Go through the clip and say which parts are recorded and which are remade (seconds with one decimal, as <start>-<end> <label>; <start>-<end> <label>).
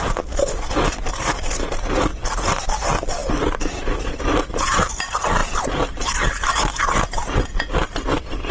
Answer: 0.0-8.5 recorded